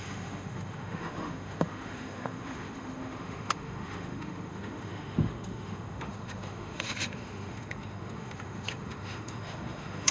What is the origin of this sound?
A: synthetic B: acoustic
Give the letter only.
A